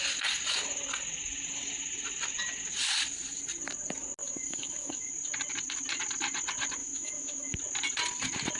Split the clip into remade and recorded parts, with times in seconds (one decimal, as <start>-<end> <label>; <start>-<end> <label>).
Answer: 0.0-4.2 recorded; 4.2-5.1 remade; 5.1-6.8 recorded; 6.8-7.6 remade; 7.6-8.6 recorded